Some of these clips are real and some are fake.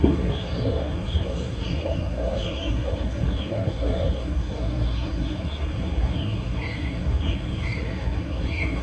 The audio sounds fake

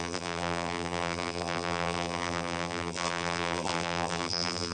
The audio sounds fake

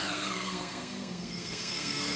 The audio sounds fake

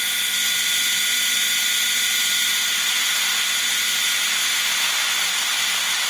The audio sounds real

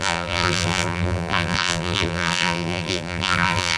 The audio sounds fake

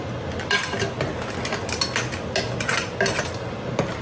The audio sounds real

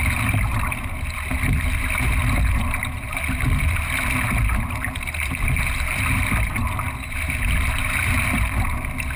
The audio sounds real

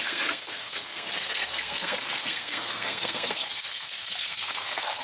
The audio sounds fake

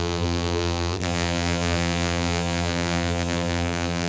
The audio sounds fake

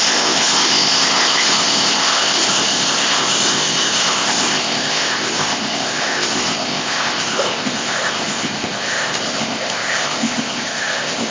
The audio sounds fake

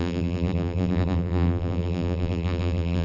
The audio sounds fake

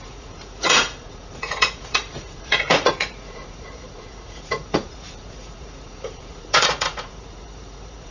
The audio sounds fake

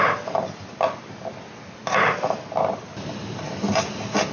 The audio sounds real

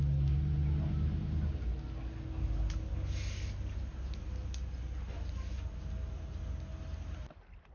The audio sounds real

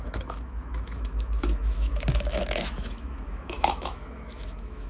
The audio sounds fake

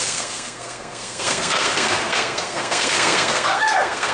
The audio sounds fake